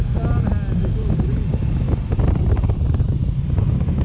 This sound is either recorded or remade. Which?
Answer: recorded